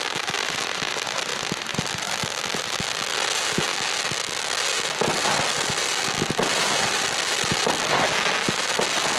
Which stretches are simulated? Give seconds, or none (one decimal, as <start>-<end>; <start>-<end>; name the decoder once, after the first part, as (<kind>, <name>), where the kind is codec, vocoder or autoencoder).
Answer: none